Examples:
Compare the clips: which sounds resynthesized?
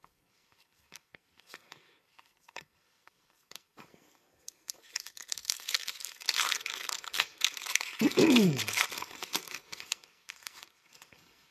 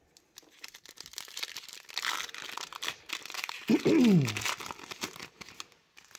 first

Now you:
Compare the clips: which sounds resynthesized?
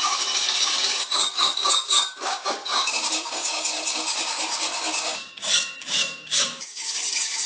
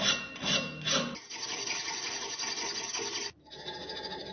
first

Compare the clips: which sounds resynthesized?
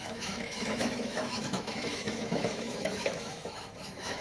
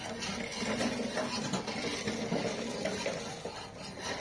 first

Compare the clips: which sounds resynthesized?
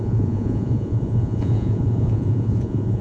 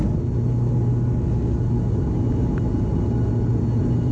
first